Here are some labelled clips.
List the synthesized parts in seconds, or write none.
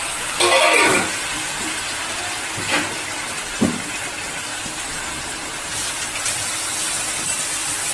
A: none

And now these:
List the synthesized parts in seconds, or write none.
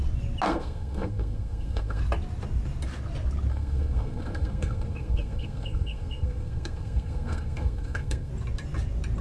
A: 0.5-2.0 (codec, SNAC); 3.5-8.3